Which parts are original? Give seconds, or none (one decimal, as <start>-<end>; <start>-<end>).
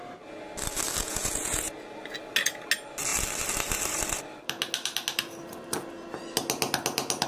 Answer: 0.0-1.0; 1.7-7.3